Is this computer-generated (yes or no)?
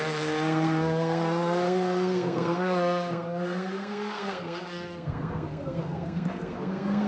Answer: yes